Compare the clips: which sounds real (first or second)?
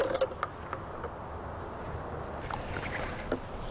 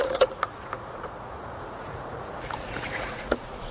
first